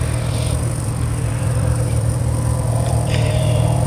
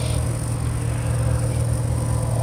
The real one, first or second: second